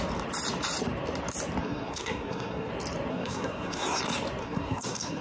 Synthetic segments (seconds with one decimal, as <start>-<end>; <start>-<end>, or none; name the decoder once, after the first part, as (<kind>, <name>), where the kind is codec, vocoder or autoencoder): 1.6-2.7 (codec, SNAC); 3.1-4.0; 4.4-5.2